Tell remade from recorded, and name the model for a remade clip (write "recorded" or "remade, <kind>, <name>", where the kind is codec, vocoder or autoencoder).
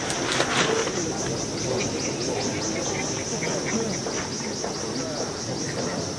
recorded